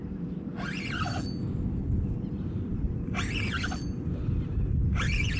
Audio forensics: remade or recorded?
recorded